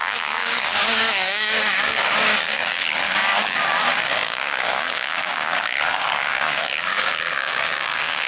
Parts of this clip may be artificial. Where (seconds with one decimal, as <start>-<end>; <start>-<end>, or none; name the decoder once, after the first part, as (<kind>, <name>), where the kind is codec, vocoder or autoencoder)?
0.0-8.3 (codec, DAC)